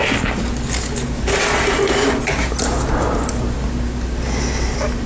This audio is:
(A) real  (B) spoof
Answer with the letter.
A